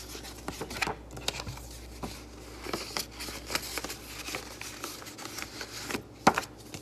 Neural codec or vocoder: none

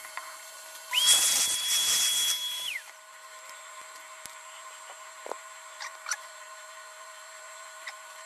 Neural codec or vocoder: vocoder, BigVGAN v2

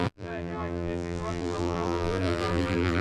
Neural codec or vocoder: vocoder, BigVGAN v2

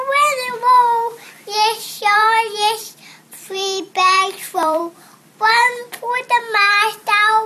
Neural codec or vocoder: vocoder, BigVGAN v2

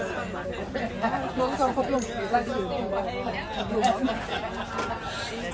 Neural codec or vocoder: none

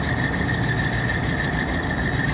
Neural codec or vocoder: none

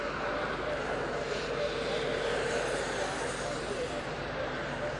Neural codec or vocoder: vocoder, BigVGAN v2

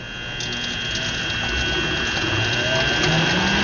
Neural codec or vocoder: none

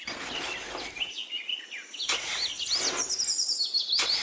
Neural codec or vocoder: none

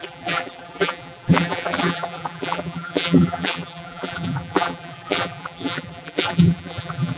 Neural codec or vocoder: vocoder, BigVGAN v2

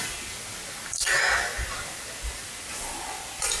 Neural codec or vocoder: none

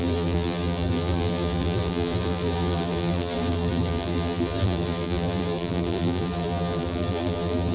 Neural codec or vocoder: vocoder, BigVGAN v2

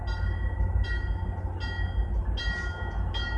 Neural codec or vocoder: none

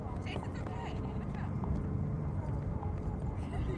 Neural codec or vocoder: vocoder, BigVGAN v2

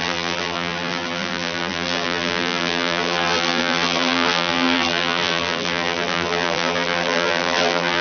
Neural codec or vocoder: vocoder, BigVGAN v2